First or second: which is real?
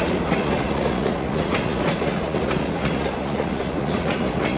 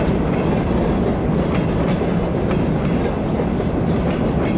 second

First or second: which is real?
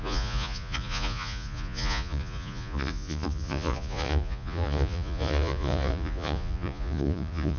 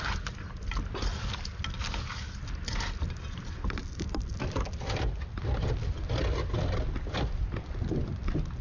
second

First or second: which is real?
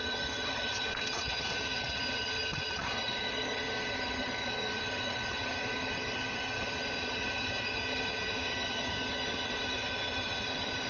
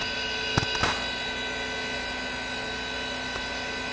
second